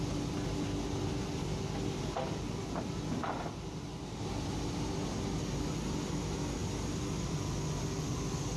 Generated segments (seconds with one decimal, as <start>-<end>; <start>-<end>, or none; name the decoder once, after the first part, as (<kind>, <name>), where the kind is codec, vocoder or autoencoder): none